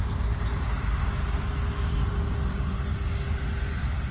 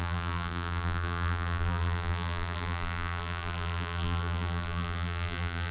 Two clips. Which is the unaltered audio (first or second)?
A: first